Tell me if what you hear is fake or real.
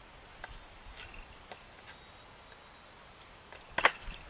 real